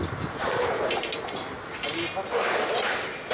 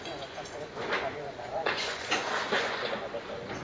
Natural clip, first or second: first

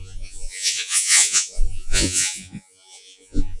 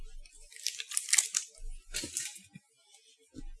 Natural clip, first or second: second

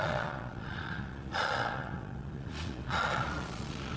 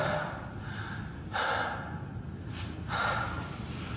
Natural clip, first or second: second